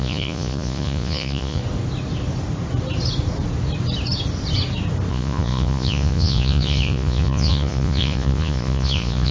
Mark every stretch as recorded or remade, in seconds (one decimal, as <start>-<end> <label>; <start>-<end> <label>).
0.0-1.6 remade; 1.6-5.1 recorded; 5.1-9.3 remade